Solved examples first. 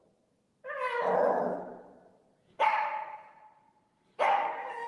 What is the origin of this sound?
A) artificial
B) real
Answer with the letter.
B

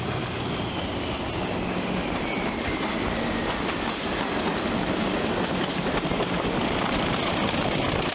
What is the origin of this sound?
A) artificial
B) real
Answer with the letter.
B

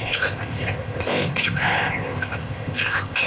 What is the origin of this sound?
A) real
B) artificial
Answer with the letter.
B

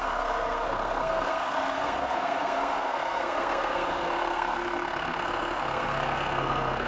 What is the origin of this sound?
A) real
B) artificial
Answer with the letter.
B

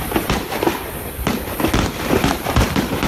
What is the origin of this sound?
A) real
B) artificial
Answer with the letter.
B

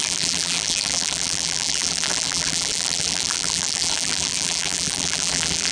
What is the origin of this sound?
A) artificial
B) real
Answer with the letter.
A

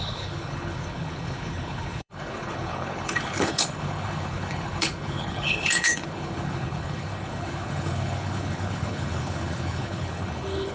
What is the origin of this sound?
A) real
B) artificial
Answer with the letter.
B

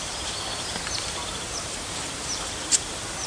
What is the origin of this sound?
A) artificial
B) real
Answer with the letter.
A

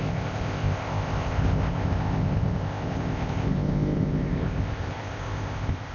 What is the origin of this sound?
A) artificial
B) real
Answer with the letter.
A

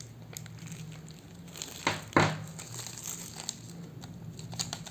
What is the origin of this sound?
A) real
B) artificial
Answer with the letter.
A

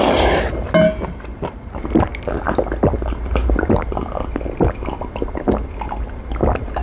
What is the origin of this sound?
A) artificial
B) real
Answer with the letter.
B